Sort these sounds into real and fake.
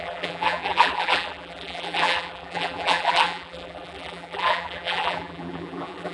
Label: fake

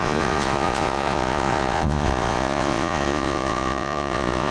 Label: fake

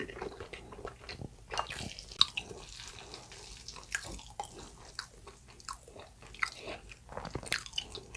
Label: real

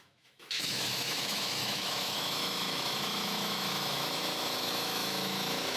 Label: fake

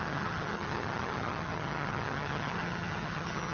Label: fake